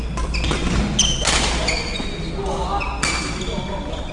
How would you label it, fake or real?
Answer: real